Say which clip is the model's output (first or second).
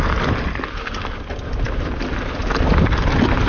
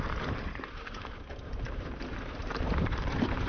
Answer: second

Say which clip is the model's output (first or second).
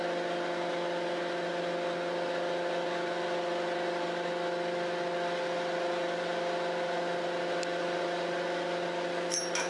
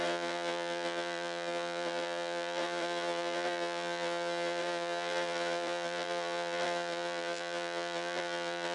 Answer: second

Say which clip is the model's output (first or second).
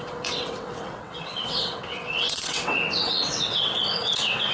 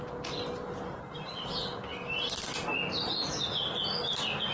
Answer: first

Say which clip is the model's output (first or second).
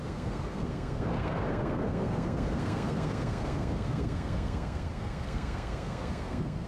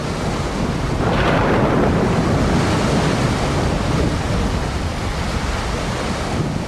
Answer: first